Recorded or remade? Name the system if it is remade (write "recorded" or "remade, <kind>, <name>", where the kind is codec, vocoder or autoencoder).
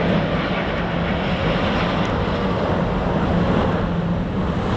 recorded